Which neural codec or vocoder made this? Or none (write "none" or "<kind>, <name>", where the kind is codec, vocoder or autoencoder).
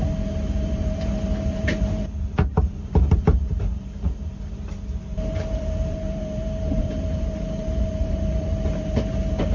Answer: vocoder, BigVGAN v2